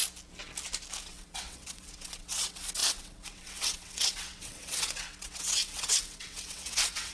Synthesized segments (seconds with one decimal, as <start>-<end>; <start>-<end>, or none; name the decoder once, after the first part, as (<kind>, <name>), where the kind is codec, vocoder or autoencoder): 1.0-7.1 (vocoder, WaveNeXt)